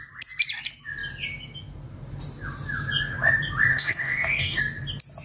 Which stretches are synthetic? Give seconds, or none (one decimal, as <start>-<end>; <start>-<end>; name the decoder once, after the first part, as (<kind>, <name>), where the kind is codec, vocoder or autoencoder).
3.7-4.6 (codec, DAC)